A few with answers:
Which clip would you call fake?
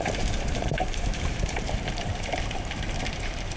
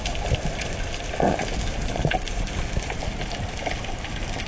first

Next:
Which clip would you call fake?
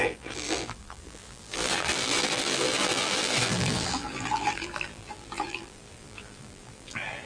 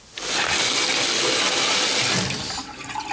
first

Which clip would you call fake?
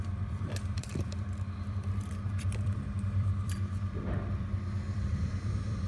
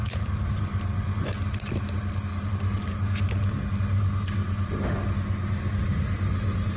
first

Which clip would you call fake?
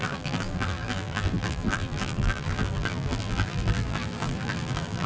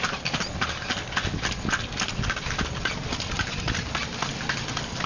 first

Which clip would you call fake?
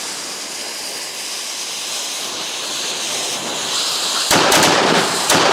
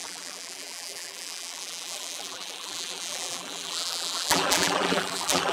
second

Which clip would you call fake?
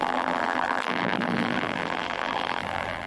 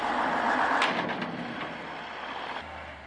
first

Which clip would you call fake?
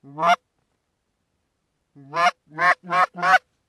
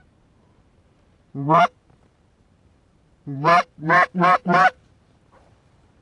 second